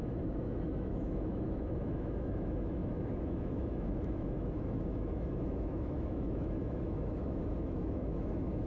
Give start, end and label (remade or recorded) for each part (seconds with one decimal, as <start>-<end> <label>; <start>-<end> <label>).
0.0-8.7 remade